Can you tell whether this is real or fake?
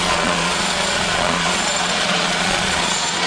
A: fake